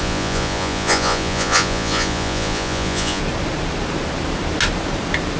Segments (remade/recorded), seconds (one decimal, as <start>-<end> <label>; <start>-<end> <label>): 0.0-3.2 remade; 3.2-5.4 recorded